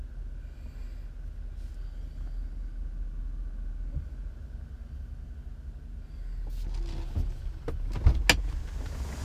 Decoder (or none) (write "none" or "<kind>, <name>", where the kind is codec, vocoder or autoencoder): none